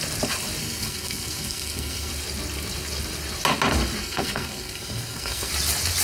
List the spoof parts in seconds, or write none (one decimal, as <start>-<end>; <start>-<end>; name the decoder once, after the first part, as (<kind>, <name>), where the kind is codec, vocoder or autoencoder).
0.6-2.1 (codec, SNAC); 4.0-5.5